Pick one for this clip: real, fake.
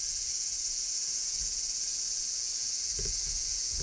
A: fake